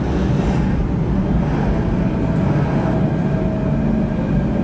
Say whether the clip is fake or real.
real